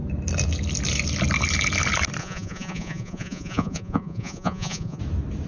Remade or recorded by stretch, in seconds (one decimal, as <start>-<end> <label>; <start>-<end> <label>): 0.0-2.2 recorded; 2.2-5.0 remade; 5.0-5.5 recorded